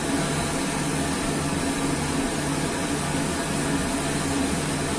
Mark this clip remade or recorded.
recorded